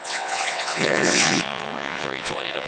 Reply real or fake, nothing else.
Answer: fake